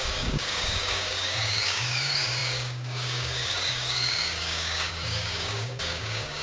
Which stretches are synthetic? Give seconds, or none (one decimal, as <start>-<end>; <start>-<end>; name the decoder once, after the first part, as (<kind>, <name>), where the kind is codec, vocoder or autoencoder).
0.0-6.4 (codec, DAC)